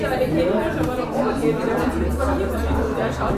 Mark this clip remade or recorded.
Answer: recorded